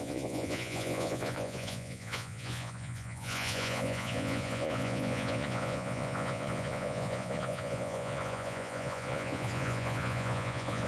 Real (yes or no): no